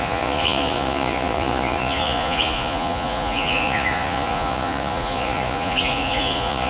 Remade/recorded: remade